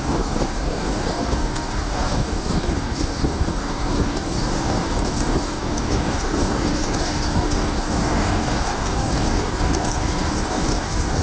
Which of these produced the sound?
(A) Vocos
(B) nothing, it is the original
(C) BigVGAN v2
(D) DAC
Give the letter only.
D